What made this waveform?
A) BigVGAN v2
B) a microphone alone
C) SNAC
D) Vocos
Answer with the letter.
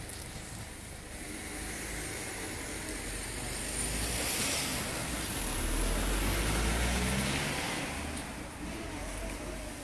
B